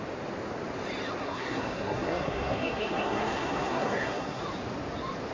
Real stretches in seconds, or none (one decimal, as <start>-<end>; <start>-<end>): 0.0-1.2; 4.4-5.3